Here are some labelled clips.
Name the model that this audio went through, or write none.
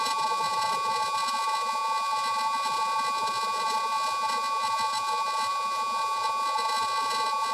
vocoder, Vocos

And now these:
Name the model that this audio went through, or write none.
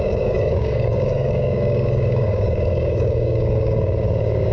codec, DAC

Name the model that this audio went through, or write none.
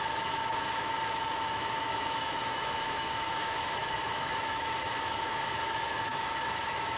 autoencoder, DAC-VAE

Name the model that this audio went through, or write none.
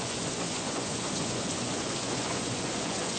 vocoder, Vocos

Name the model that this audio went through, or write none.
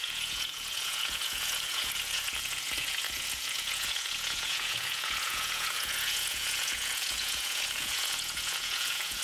vocoder, Vocos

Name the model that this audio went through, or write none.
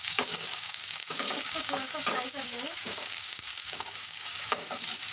codec, DAC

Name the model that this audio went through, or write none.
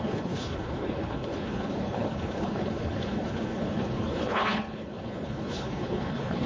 codec, HILCodec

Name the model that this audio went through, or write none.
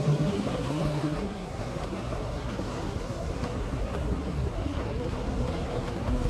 codec, SNAC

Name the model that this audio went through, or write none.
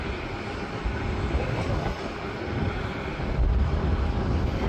none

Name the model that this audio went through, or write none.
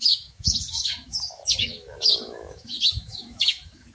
autoencoder, DAC-VAE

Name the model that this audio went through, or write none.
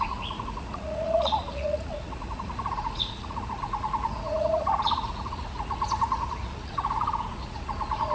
vocoder, Vocos